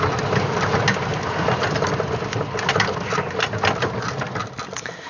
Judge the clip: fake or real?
real